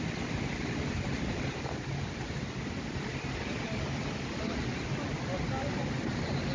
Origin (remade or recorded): recorded